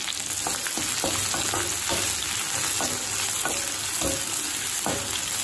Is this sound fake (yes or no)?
no